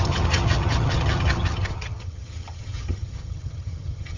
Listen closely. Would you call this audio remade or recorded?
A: remade